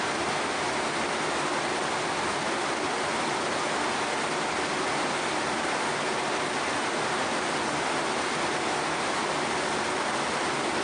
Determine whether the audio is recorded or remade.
recorded